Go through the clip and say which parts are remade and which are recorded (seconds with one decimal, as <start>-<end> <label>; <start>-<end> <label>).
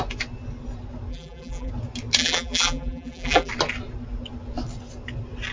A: 0.0-1.1 recorded; 1.1-1.7 remade; 1.7-2.2 recorded; 2.2-3.5 remade; 3.5-5.5 recorded